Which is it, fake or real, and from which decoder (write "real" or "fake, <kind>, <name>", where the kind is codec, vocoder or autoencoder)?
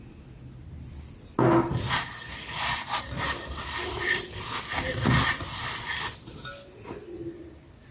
real